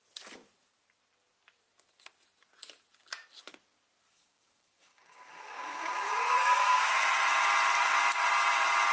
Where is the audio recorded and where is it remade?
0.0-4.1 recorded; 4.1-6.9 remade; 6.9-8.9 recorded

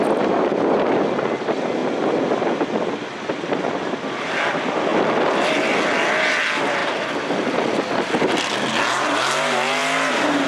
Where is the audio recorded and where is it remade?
0.0-4.9 recorded; 4.9-5.7 remade; 5.7-6.8 recorded; 6.8-7.5 remade; 7.5-10.5 recorded